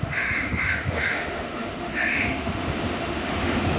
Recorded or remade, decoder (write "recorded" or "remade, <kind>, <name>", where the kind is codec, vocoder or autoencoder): remade, autoencoder, DAC-VAE